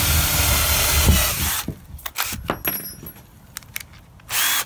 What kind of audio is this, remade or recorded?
recorded